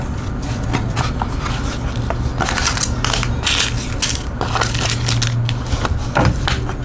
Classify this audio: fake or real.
real